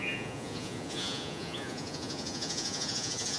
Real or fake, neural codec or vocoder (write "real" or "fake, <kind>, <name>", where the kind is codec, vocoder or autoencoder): fake, vocoder, Vocos